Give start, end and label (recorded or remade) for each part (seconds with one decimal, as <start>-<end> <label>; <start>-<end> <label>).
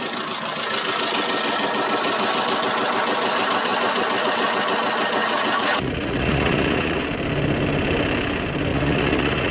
0.0-5.2 recorded; 5.2-7.0 remade; 7.0-8.7 recorded; 8.7-9.5 remade